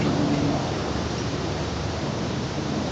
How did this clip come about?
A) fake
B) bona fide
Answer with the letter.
A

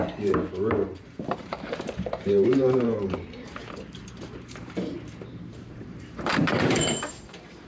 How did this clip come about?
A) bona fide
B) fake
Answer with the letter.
B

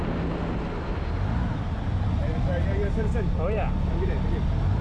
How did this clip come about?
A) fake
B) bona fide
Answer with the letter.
B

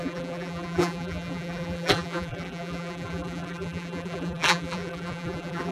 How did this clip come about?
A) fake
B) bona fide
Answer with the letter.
A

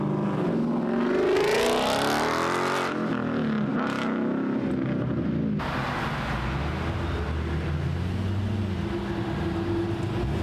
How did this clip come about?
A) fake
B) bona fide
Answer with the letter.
B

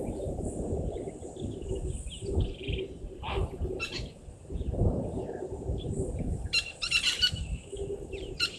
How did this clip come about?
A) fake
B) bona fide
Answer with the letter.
A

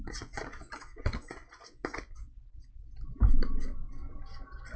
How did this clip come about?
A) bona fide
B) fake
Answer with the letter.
A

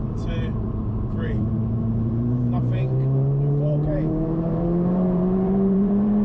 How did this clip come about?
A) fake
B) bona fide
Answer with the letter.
A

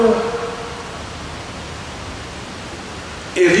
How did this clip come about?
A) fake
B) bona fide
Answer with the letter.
B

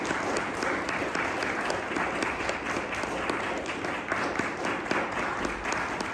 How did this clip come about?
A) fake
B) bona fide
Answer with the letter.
B